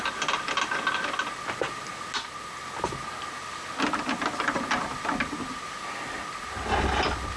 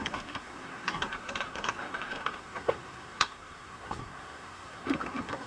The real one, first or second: first